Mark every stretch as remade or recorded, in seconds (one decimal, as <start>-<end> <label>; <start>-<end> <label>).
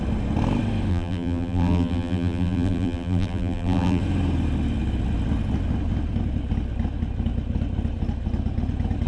0.0-0.9 recorded; 0.9-4.0 remade; 4.0-9.1 recorded